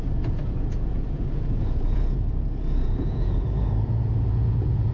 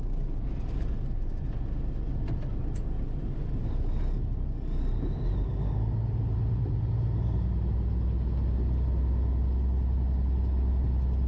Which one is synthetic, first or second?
first